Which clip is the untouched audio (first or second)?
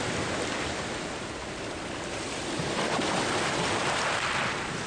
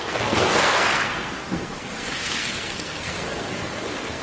first